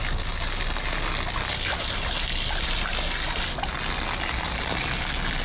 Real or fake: real